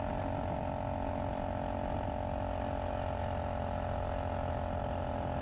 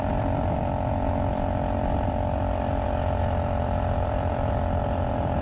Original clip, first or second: first